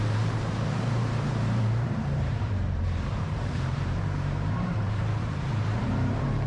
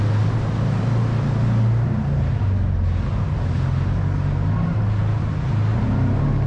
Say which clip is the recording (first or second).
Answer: second